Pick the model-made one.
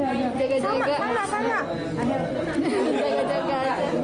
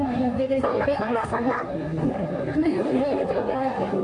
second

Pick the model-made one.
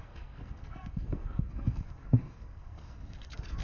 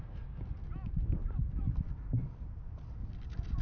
first